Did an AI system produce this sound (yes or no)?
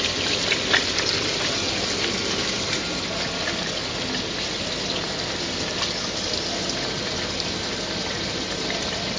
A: no